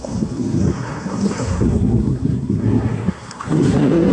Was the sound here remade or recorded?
remade